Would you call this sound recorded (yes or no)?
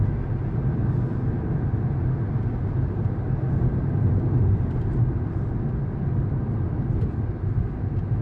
yes